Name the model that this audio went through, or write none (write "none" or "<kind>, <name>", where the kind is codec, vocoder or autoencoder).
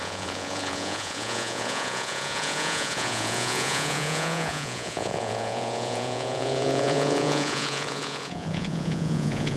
vocoder, Vocos